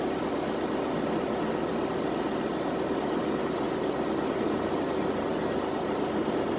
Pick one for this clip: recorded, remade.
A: recorded